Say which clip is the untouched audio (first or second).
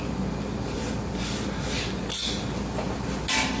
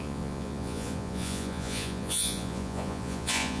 first